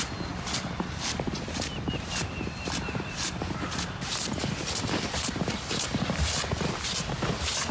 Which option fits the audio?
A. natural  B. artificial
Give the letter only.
A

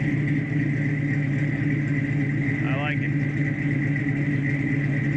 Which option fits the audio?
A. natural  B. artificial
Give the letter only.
A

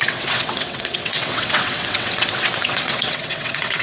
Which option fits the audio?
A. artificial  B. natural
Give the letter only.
A